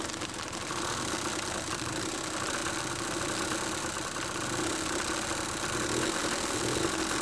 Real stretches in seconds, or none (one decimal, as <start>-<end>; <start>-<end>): 0.0-7.2